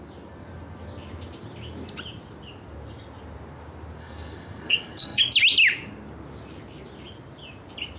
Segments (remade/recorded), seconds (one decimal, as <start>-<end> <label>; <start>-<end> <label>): 0.0-4.0 recorded; 4.0-5.2 remade; 5.2-8.0 recorded